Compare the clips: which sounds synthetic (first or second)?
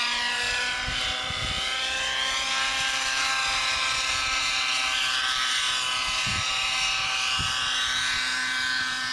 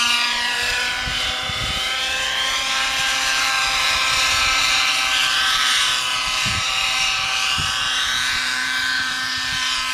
second